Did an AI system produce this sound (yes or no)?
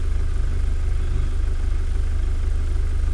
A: no